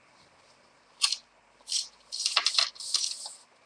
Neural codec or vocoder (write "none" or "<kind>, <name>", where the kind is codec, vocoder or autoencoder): none